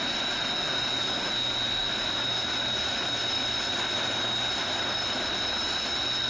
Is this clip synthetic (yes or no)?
no